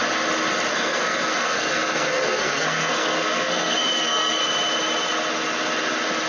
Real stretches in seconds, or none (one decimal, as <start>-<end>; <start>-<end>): 0.0-0.7; 4.4-6.3